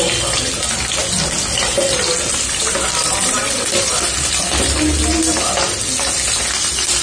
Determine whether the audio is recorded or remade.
recorded